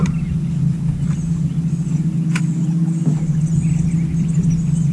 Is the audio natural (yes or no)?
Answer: yes